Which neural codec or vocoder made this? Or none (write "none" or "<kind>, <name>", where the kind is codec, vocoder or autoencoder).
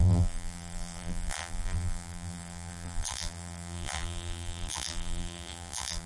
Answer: vocoder, BigVGAN v2